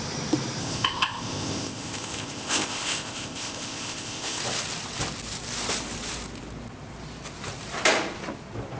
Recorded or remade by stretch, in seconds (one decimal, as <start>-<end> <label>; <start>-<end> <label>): 0.0-0.6 recorded; 0.6-4.4 remade; 4.4-8.8 recorded